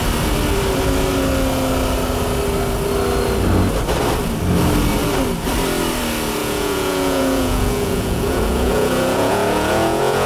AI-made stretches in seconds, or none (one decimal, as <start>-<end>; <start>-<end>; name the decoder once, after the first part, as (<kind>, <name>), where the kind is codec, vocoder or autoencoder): 6.4-10.3 (vocoder, Vocos)